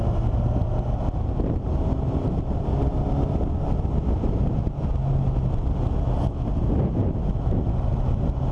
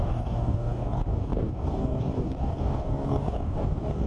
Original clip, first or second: first